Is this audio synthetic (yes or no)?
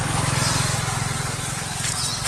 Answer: no